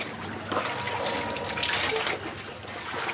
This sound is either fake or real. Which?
real